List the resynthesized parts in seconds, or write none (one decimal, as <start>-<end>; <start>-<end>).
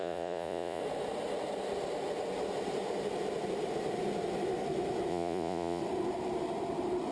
0.0-0.8; 5.1-5.8